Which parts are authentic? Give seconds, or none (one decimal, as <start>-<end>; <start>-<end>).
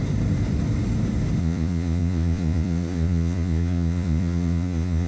0.0-1.4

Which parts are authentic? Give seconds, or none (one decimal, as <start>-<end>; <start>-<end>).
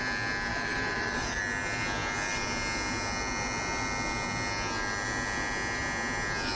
0.0-0.5; 1.4-6.5